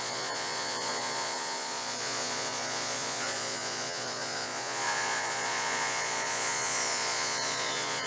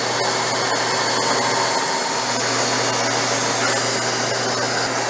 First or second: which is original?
second